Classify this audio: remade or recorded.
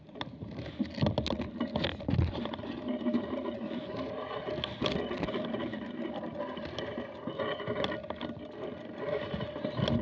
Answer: recorded